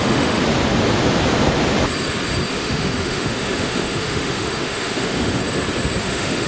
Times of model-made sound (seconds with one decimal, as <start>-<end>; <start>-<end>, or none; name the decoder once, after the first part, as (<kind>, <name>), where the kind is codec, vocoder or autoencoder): 0.0-0.4 (autoencoder, DAC-VAE); 2.5-5.4; 6.0-6.5